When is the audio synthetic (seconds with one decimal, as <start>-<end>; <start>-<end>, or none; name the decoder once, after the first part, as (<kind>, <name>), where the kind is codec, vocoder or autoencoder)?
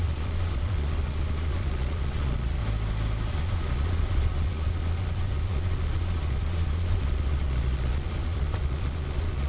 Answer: 0.0-2.6 (vocoder, Vocos); 3.3-9.5